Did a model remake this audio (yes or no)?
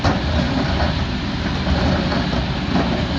no